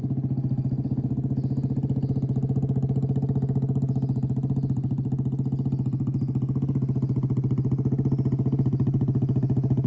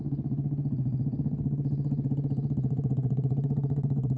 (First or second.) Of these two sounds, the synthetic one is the second